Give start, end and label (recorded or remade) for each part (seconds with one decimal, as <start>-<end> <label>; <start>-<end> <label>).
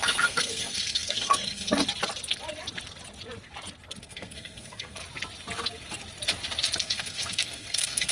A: 0.0-1.8 remade; 1.8-4.0 recorded; 4.0-5.0 remade; 5.0-6.8 recorded; 6.8-8.1 remade